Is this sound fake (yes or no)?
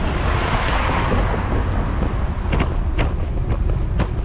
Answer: no